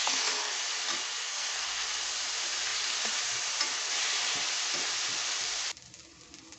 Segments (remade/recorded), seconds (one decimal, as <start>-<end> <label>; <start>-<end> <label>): 0.0-0.5 remade; 0.5-1.2 recorded; 1.2-1.9 remade; 1.9-6.6 recorded